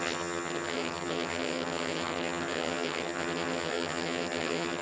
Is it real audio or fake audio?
fake